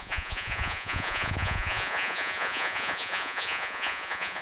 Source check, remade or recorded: remade